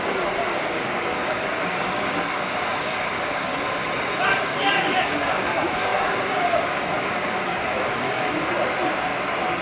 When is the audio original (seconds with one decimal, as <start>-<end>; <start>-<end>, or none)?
3.5-4.4; 8.5-9.6